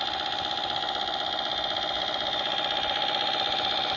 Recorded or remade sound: recorded